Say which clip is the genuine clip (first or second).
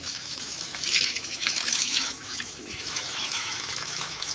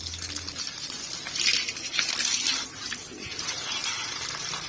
second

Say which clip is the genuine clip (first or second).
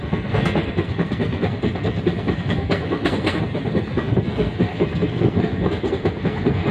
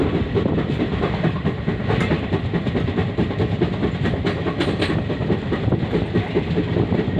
second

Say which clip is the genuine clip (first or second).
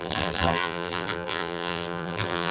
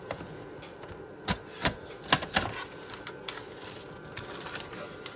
second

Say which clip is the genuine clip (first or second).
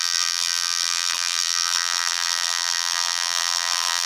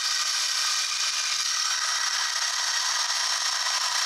second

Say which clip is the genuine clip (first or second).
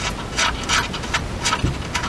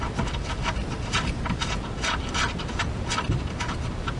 first